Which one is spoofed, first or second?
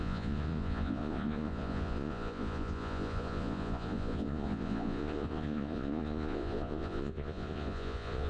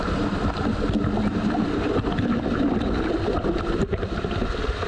first